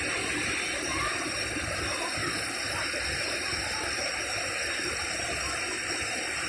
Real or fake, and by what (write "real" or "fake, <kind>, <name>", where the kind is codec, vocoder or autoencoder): real